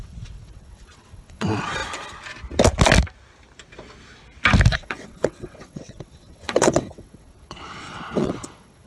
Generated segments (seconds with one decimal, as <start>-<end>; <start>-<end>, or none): 0.0-1.8; 4.7-8.9